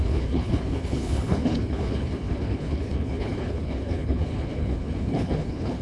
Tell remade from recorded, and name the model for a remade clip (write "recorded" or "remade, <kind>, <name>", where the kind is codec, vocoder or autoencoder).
remade, codec, HILCodec